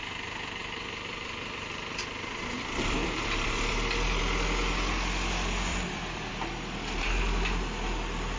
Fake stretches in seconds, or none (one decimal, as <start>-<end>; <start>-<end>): 0.6-4.2; 5.7-6.3